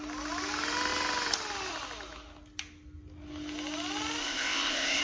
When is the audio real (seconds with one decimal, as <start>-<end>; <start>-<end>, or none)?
0.0-4.2